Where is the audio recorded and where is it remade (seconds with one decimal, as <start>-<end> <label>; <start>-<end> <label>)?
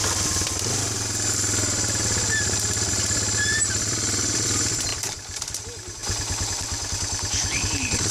0.0-2.9 recorded; 2.9-6.0 remade; 6.0-6.9 recorded; 6.9-8.1 remade